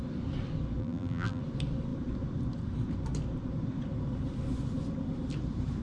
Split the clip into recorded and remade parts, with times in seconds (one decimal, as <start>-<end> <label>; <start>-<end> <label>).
0.0-0.8 recorded; 0.8-1.4 remade; 1.4-5.8 recorded

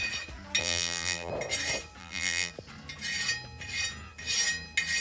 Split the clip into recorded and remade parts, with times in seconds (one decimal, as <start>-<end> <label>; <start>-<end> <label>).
0.0-0.6 recorded; 0.6-1.3 remade; 1.3-2.0 recorded; 2.0-2.5 remade; 2.5-5.0 recorded

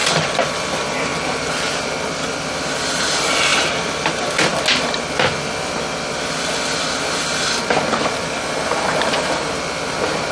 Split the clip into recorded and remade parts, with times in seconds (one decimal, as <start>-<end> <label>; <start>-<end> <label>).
0.0-0.5 remade; 0.5-1.1 recorded; 1.1-1.9 remade; 1.9-10.3 recorded